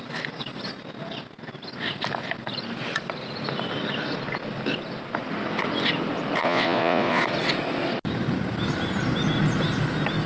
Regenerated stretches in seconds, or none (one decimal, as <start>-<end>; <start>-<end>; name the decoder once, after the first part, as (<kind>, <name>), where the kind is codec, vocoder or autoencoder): 6.4-7.2 (vocoder, Vocos)